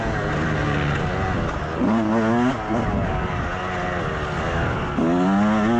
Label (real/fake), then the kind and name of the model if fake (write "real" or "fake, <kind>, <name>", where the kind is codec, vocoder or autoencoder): real